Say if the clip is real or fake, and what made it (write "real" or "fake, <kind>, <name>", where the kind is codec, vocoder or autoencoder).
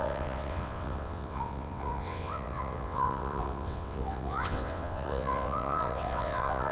fake, vocoder, WaveNeXt